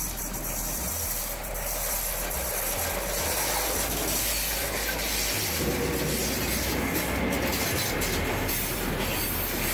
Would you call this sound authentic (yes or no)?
yes